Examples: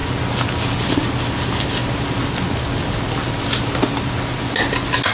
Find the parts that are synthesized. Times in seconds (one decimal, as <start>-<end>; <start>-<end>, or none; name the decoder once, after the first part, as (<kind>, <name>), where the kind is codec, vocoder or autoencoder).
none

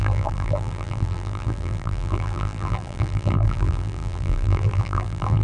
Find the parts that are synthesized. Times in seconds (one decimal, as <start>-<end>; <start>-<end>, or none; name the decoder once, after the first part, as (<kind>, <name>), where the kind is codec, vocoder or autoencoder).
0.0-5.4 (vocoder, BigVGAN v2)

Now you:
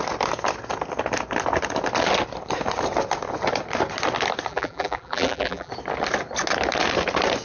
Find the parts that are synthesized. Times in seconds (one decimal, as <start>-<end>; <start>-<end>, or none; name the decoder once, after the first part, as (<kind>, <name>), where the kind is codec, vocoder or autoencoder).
4.5-5.7 (vocoder, BigVGAN v2)

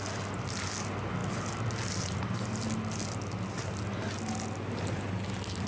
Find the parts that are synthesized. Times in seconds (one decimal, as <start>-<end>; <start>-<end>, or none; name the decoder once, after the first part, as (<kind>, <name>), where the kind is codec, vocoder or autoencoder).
none

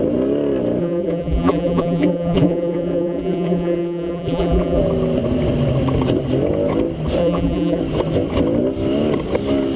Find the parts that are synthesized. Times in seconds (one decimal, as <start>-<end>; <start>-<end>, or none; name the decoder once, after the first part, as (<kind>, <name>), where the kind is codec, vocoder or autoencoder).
0.8-4.8 (vocoder, BigVGAN v2); 7.2-7.8